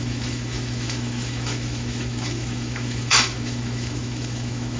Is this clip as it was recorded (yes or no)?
no